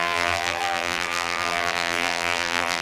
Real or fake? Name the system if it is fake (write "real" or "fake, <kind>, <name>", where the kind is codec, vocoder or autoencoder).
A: fake, vocoder, BigVGAN v2